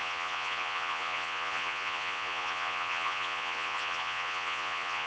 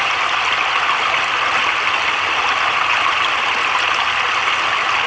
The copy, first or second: first